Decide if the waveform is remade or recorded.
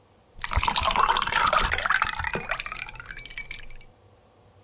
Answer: recorded